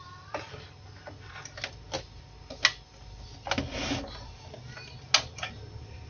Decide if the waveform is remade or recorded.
recorded